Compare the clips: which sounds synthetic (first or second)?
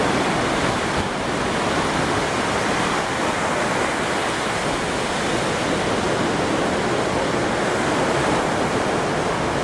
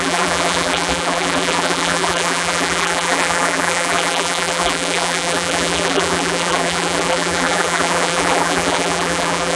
second